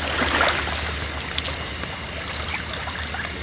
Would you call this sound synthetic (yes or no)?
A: no